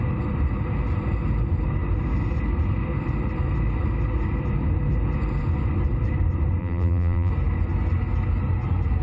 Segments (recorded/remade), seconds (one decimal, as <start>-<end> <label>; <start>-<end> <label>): 0.0-6.6 recorded; 6.6-7.3 remade; 7.3-9.0 recorded